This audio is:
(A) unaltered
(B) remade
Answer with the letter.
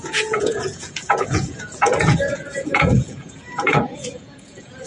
B